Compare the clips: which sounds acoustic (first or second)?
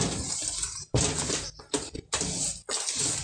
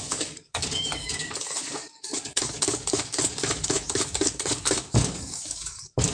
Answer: first